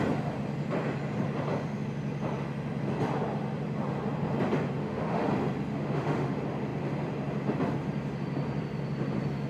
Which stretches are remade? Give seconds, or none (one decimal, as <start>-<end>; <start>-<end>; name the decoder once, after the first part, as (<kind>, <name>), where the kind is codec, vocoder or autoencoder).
4.8-5.3 (autoencoder, DAC-VAE); 5.7-6.3